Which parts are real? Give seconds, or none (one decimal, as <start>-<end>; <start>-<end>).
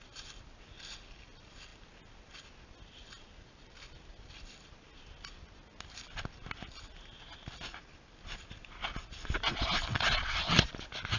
0.0-9.9; 10.7-11.2